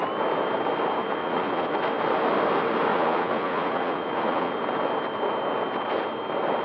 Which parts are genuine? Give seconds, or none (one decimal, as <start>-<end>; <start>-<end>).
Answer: 0.0-1.2; 1.8-2.9; 4.5-6.6